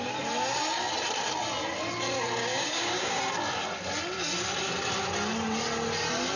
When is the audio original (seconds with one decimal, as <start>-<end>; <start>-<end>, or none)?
0.0-2.4; 3.2-6.4